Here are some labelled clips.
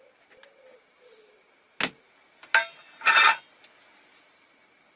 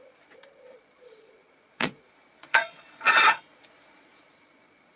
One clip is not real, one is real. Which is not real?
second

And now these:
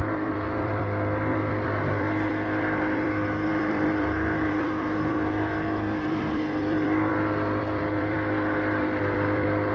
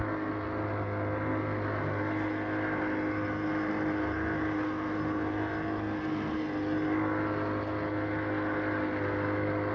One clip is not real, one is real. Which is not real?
first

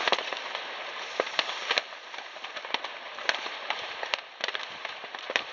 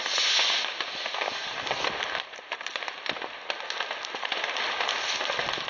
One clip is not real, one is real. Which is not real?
first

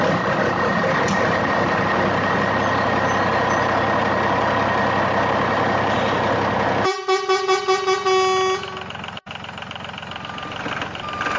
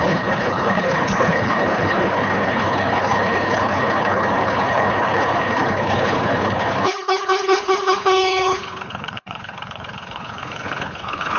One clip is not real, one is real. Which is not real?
second